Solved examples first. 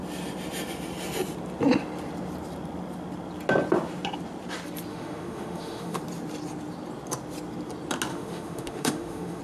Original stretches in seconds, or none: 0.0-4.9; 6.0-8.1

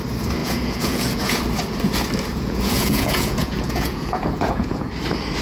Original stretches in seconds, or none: 0.0-0.4; 1.4-2.3; 4.9-5.4

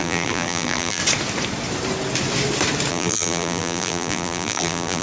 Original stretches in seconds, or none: 1.0-2.9

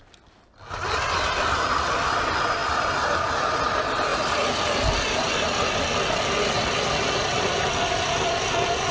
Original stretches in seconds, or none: 0.0-8.9

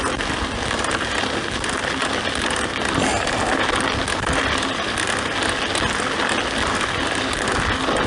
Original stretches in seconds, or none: 0.0-3.1; 3.7-8.1

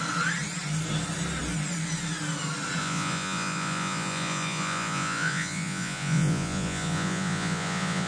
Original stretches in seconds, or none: 0.0-2.8

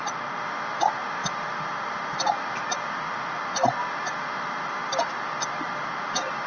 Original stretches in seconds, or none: 0.0-6.5

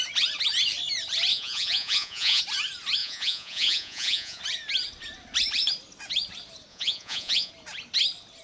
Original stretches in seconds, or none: 0.0-1.3; 2.4-3.0; 4.4-6.7; 7.5-8.4